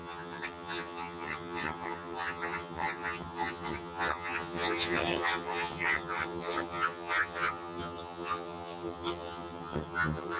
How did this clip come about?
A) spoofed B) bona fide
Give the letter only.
A